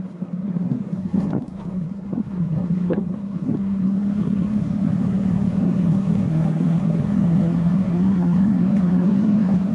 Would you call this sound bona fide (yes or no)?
no